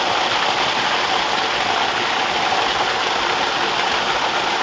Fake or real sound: real